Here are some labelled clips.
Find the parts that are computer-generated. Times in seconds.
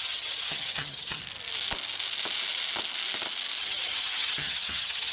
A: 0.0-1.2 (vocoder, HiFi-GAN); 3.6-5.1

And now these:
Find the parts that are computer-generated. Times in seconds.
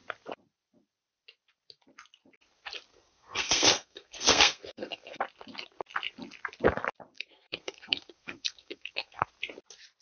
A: 2.9-5.2 (codec, SNAC); 7.1-9.3